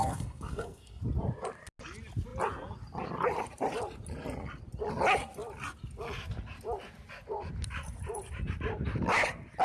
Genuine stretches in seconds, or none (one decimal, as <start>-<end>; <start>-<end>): 1.0-9.6